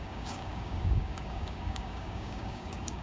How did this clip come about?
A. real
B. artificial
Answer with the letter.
B